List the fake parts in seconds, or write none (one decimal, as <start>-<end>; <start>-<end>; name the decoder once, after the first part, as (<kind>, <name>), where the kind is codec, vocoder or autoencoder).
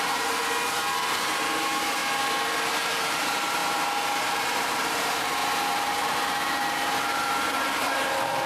0.0-0.4 (vocoder, BigVGAN v2); 1.2-2.0; 2.7-8.5